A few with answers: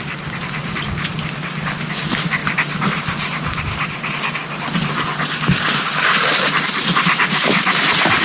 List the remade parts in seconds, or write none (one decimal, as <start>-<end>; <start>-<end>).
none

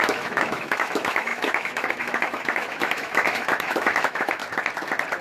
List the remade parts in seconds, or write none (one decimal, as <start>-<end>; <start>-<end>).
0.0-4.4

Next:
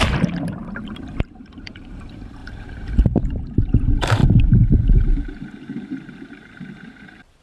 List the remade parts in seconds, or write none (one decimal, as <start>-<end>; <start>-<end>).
0.0-4.2; 4.9-7.4

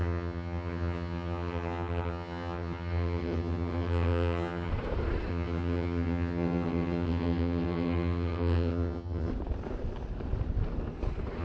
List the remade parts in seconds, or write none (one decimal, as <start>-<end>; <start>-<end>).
0.0-4.7; 5.3-9.3